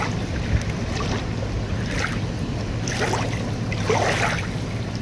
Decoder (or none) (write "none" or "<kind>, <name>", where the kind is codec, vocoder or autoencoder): none